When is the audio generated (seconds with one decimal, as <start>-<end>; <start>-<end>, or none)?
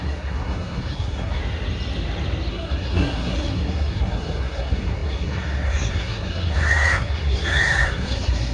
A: 0.0-1.4; 2.5-8.5